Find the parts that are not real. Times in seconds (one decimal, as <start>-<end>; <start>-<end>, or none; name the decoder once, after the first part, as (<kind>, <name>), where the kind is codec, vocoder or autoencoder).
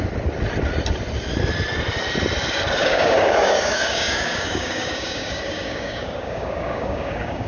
2.8-7.5 (codec, DAC)